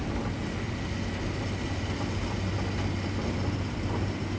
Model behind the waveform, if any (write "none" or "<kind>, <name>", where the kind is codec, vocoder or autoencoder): none